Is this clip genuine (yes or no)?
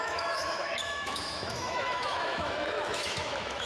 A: no